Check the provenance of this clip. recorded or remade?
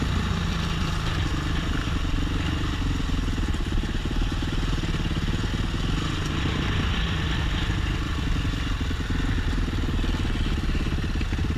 recorded